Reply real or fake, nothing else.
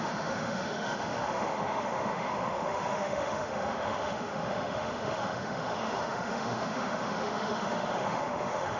fake